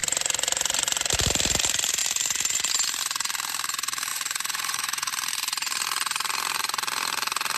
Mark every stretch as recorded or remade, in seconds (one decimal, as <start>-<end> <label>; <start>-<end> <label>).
0.0-4.1 recorded; 4.1-5.1 remade; 5.1-7.6 recorded